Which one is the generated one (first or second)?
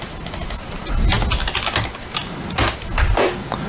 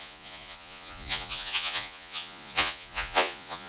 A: second